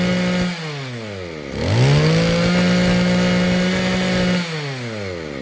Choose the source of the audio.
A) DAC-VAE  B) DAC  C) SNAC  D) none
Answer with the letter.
D